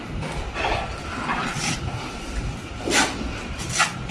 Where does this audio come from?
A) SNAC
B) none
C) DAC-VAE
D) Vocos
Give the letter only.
B